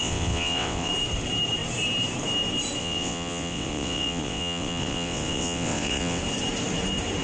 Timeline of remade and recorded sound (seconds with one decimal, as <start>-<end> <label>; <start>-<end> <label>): 0.0-0.9 remade; 0.9-2.8 recorded; 2.8-6.2 remade; 6.2-7.2 recorded